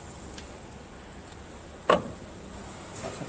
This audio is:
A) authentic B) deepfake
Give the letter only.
A